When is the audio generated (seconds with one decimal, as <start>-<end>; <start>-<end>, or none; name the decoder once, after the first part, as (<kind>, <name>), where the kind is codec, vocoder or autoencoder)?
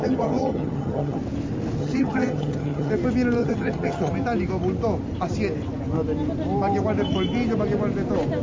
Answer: 0.0-1.2 (vocoder, HiFi-GAN); 1.8-2.9; 3.4-4.1